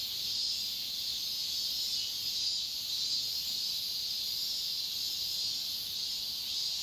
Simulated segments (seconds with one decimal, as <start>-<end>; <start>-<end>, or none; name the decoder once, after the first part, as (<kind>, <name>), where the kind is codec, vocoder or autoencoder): none